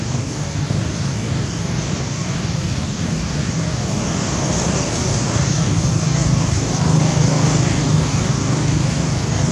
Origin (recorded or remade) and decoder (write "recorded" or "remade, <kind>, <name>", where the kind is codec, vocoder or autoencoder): remade, codec, DAC